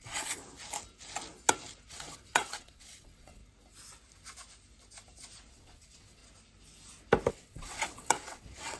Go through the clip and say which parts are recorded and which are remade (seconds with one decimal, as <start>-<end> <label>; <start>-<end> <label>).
0.0-0.4 remade; 0.4-1.9 recorded; 1.9-3.4 remade; 3.4-5.5 recorded; 5.5-6.2 remade; 6.2-7.3 recorded; 7.3-8.8 remade